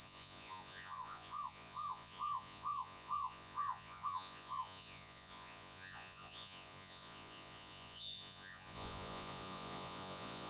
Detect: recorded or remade remade